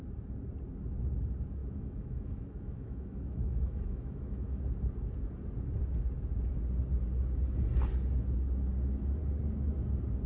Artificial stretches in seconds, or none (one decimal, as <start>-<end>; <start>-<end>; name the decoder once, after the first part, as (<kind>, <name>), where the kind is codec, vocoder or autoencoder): 1.6-4.6 (autoencoder, DAC-VAE)